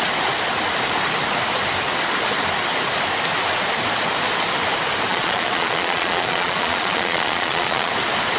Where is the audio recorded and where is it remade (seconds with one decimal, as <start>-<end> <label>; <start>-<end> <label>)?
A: 0.0-5.1 recorded; 5.1-7.9 remade; 7.9-8.4 recorded